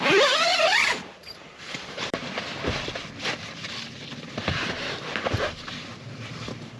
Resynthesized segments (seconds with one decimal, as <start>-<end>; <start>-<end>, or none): 0.0-6.8